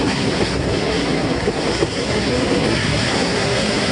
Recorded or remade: remade